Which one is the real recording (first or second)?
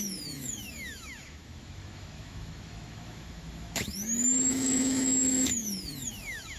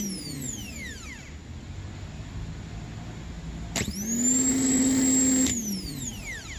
second